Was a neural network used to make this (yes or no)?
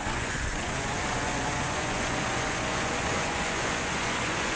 yes